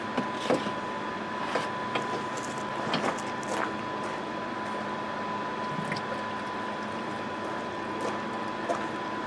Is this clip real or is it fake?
real